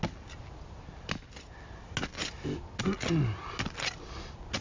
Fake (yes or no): no